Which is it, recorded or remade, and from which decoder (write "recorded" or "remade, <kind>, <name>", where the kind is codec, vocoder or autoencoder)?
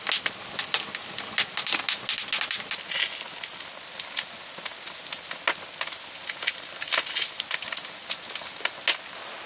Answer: recorded